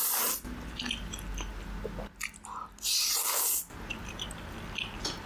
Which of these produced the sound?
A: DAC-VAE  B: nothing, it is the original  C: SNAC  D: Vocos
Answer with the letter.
B